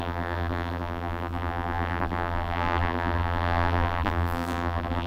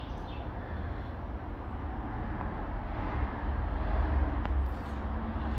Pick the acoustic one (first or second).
second